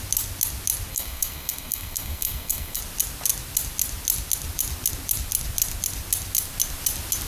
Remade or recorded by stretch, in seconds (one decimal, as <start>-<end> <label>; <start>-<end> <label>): 0.0-0.9 recorded; 0.9-2.8 remade; 2.8-7.3 recorded